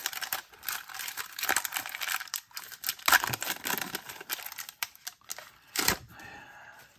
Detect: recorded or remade recorded